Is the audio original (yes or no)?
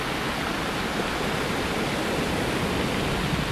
yes